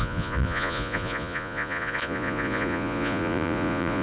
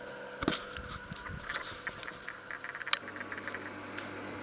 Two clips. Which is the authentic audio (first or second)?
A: second